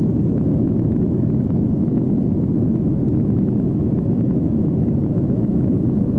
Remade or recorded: remade